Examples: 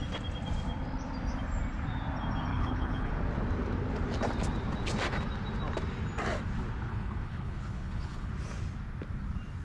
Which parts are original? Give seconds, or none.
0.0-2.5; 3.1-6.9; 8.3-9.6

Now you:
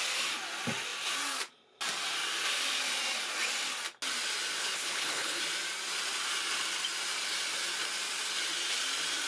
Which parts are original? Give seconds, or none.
0.0-4.6; 5.4-9.3

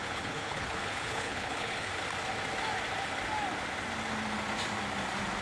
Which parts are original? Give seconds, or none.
1.9-5.4

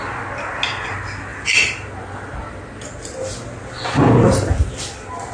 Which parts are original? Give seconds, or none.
0.0-5.3

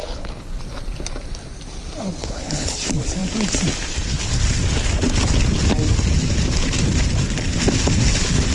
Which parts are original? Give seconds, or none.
0.6-2.2; 2.8-8.5

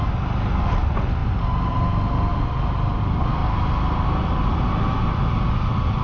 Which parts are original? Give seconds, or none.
0.0-6.0